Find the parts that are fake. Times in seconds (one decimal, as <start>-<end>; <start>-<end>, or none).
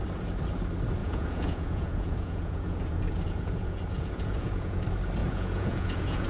1.0-4.8; 5.2-6.3